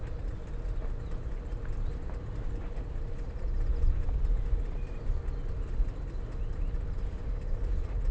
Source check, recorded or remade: recorded